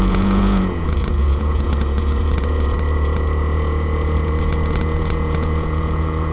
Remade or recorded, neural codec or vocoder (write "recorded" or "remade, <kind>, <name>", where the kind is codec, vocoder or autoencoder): remade, vocoder, Vocos